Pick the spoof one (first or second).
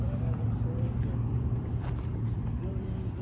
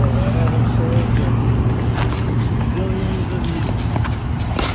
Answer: first